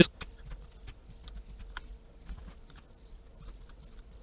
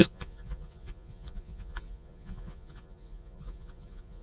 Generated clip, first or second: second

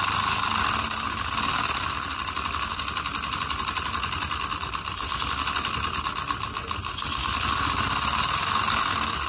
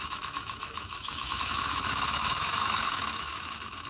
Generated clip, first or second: second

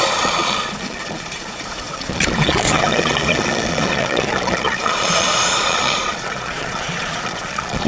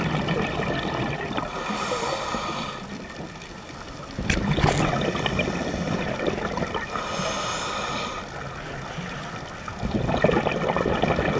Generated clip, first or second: first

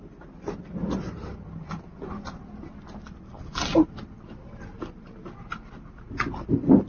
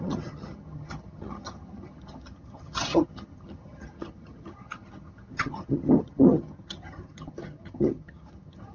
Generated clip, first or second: second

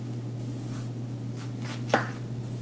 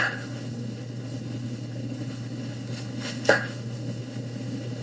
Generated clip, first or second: second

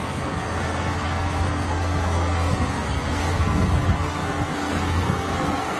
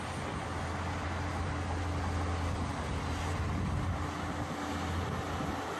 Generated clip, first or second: first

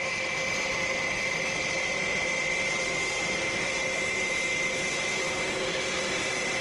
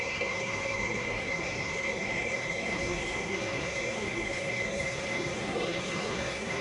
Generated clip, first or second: second